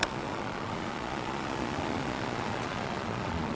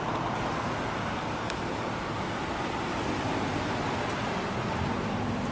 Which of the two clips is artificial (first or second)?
first